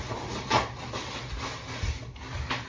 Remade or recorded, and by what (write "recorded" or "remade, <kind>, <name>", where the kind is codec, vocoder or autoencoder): recorded